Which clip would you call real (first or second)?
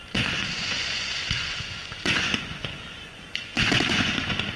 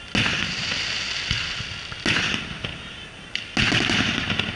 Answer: second